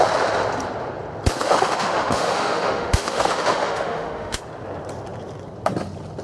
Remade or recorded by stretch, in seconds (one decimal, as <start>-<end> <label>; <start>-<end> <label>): 0.0-1.4 recorded; 1.4-4.4 remade; 4.4-6.2 recorded

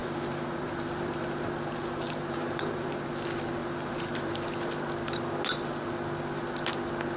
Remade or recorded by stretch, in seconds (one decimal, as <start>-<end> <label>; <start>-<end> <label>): 0.0-3.1 remade; 3.1-3.6 recorded; 3.6-4.3 remade; 4.3-7.2 recorded

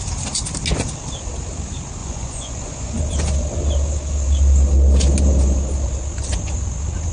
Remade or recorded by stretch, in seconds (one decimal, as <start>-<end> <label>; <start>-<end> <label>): 0.0-2.0 recorded; 2.0-3.0 remade; 3.0-7.1 recorded

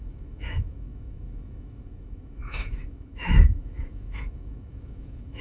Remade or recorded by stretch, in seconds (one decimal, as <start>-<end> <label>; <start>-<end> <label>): 0.0-5.4 remade

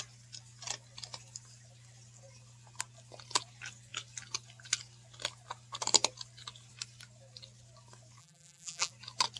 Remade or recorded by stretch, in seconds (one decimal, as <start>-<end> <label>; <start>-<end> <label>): 0.0-8.2 recorded; 8.2-8.9 remade; 8.9-9.4 recorded